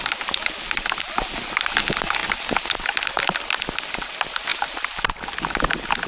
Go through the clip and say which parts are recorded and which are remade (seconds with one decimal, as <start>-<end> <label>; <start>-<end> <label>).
0.0-6.1 recorded

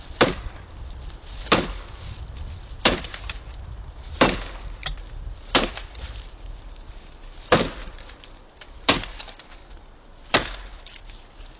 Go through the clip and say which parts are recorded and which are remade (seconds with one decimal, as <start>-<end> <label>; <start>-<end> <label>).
0.0-4.8 remade; 4.8-5.3 recorded; 5.3-9.6 remade; 9.6-10.3 recorded; 10.3-11.6 remade

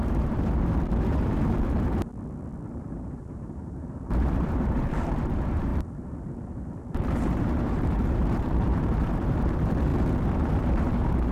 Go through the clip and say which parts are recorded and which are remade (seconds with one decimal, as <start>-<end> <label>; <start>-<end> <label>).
0.0-2.1 remade; 2.1-2.7 recorded; 2.7-11.3 remade

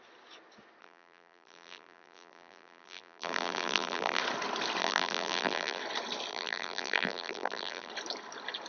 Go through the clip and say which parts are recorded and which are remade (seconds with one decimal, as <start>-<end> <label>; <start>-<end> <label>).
0.0-0.8 recorded; 0.8-4.2 remade; 4.2-4.8 recorded; 4.8-5.8 remade; 5.8-6.3 recorded; 6.3-7.9 remade; 7.9-8.7 recorded

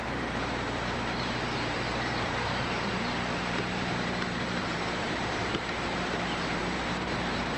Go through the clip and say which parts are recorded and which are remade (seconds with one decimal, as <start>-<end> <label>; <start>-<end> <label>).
0.0-7.6 remade

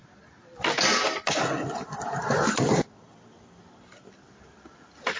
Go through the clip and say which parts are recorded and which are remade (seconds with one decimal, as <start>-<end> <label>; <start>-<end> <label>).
0.0-5.2 recorded